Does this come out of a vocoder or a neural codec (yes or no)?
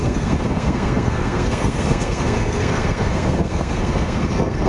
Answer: yes